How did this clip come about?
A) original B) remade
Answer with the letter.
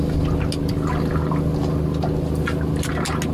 A